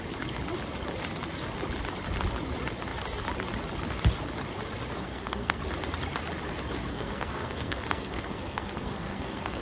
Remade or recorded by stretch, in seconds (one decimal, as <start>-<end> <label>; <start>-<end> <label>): 0.0-5.0 recorded; 5.0-5.6 remade; 5.6-6.9 recorded; 6.9-9.6 remade